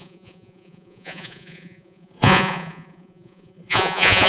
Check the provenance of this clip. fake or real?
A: fake